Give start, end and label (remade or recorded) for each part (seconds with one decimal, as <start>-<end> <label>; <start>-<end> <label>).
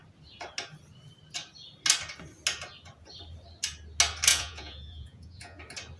0.0-4.3 recorded; 4.3-5.6 remade; 5.6-6.0 recorded